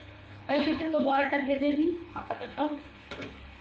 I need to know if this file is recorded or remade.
remade